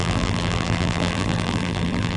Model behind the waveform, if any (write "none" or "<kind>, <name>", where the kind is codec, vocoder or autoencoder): vocoder, BigVGAN v2